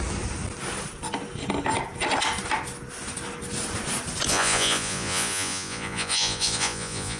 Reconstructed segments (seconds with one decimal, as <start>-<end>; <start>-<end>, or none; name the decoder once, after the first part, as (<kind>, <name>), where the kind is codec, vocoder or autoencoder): 4.3-7.2 (vocoder, Vocos)